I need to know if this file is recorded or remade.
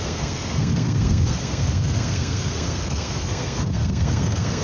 remade